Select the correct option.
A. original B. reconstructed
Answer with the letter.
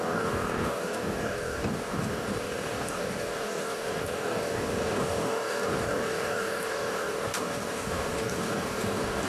B